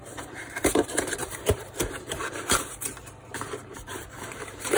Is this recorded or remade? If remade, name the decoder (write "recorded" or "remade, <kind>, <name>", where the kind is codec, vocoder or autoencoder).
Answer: remade, vocoder, BigVGAN v2